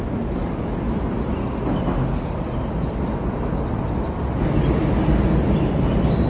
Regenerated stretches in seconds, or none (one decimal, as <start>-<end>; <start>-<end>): none